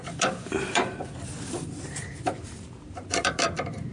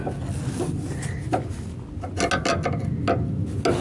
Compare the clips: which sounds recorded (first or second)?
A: second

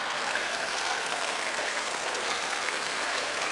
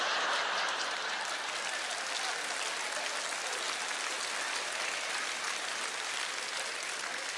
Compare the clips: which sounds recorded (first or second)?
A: second